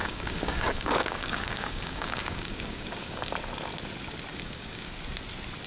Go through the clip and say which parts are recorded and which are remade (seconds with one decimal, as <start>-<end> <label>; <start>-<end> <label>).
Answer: 0.0-3.3 remade; 3.3-4.3 recorded; 4.3-4.9 remade; 4.9-5.7 recorded